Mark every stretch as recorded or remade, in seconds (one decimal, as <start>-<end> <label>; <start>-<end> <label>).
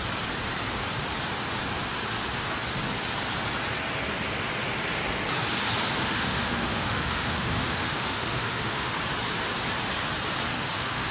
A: 0.0-6.0 recorded; 6.0-9.0 remade; 9.0-10.5 recorded; 10.5-11.1 remade